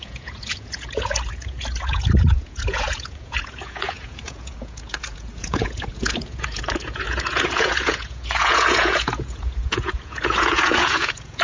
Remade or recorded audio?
remade